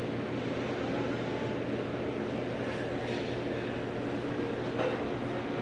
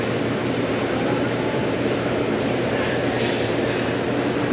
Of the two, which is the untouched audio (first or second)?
first